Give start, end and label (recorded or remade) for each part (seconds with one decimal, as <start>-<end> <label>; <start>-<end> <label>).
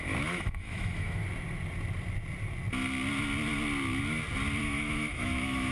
0.0-1.2 remade; 1.2-4.6 recorded; 4.6-5.7 remade